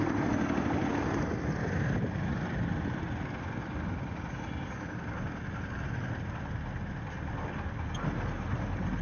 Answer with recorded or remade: recorded